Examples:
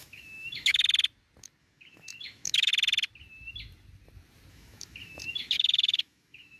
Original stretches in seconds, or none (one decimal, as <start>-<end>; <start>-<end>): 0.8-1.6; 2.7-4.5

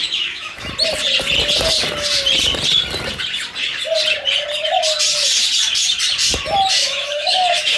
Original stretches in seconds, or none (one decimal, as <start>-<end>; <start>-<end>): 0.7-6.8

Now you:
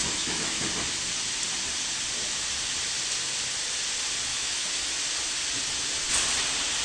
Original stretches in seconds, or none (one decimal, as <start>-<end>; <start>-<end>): 0.6-4.3; 5.0-6.8

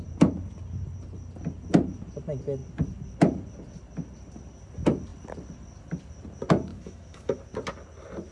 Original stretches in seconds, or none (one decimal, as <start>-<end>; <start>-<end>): 0.0-6.7; 7.4-8.3